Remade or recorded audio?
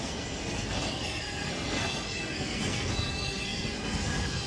remade